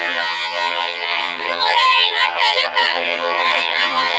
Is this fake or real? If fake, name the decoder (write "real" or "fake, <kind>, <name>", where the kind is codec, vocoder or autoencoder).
fake, vocoder, HiFi-GAN